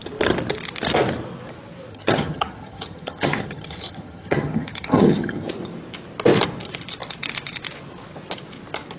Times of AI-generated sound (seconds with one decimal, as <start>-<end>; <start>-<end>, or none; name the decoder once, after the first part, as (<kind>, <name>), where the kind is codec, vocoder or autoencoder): 1.9-5.5 (vocoder, HiFi-GAN)